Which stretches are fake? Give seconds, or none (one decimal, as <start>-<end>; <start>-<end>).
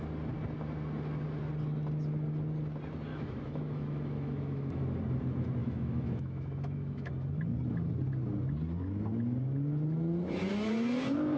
3.1-4.8; 5.6-7.1